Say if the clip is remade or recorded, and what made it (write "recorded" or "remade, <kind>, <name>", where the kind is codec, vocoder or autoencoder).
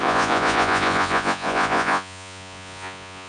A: remade, vocoder, Vocos